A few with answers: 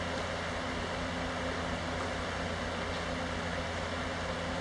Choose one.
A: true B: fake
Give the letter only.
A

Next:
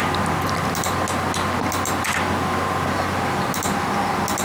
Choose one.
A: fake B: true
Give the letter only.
B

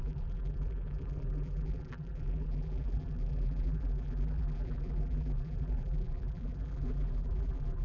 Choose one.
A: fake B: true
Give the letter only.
A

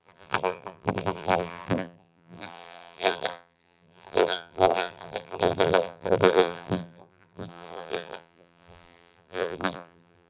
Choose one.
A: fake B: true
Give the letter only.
A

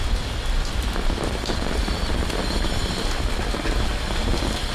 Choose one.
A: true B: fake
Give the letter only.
A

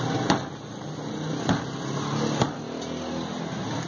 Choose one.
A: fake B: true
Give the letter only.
B